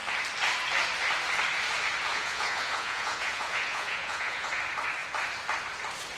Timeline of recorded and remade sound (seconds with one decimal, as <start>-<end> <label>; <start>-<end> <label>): 0.0-2.1 recorded; 2.1-4.5 remade; 4.5-6.2 recorded